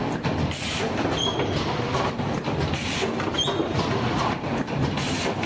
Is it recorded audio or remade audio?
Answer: recorded